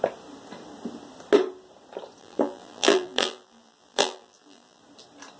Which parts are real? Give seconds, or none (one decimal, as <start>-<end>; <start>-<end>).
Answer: 0.0-2.2; 4.8-5.4